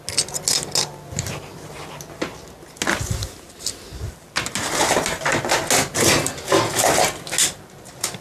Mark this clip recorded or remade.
recorded